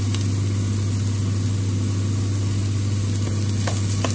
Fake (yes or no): no